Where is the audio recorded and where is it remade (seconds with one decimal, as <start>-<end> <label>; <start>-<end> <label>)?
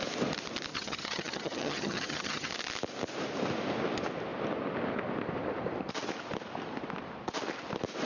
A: 0.0-0.7 recorded; 0.7-2.5 remade; 2.5-8.1 recorded